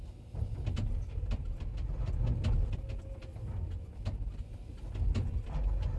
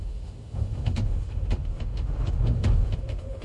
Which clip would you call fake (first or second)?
second